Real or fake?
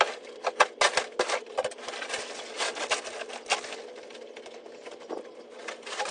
real